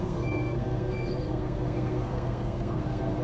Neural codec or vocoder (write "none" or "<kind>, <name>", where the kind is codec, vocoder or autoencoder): codec, SNAC